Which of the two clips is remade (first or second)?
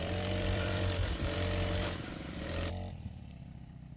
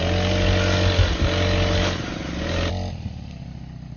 first